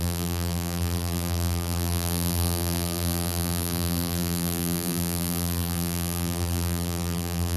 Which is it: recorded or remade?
remade